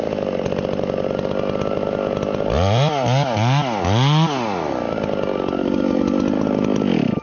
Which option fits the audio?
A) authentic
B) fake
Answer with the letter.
A